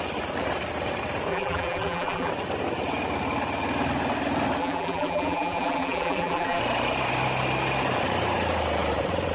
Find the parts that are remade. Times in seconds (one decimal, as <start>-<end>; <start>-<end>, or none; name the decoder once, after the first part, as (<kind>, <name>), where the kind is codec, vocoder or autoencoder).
1.3-2.3 (vocoder, BigVGAN v2); 4.6-6.6